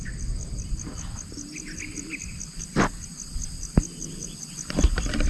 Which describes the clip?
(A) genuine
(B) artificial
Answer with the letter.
A